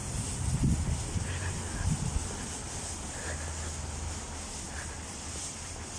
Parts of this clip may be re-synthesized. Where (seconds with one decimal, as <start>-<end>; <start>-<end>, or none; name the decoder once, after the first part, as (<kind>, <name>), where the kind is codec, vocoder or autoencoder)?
none